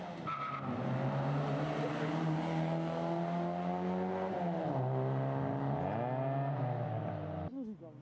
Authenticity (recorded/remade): recorded